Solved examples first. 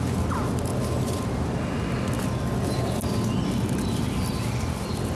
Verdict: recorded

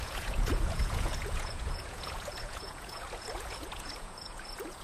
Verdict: remade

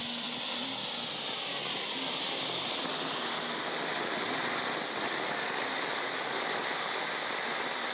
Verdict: recorded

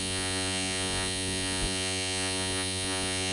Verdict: remade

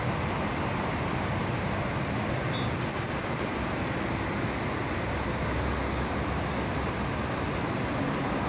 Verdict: recorded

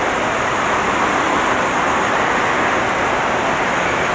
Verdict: recorded